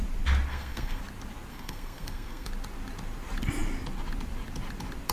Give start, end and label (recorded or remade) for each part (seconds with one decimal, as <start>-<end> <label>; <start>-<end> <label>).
0.0-0.5 recorded; 0.5-1.0 remade; 1.0-1.5 recorded; 1.5-2.5 remade; 2.5-5.1 recorded